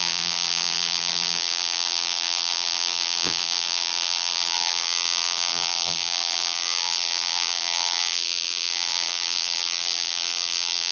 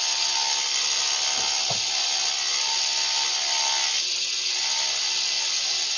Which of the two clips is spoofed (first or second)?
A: first